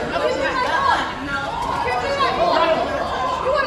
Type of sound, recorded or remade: recorded